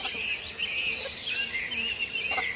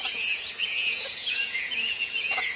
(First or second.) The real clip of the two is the first